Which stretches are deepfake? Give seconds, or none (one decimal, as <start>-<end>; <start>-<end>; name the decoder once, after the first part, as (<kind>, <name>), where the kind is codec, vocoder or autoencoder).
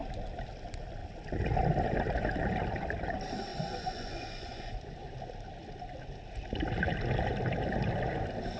3.5-4.9 (vocoder, Vocos)